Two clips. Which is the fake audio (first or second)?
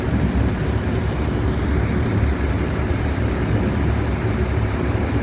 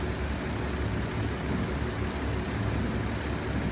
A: first